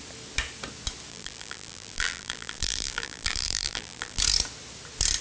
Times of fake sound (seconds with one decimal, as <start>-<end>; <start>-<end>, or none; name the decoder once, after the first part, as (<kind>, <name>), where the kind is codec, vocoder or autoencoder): 1.1-4.2 (vocoder, BigVGAN v2)